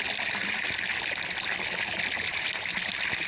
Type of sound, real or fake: real